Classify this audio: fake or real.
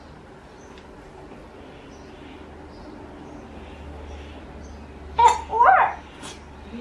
real